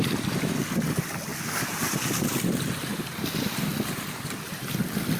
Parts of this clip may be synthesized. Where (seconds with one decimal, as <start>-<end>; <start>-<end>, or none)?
none